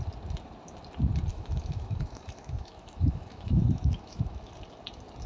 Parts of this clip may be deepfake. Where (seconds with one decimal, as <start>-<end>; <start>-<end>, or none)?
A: 1.3-4.5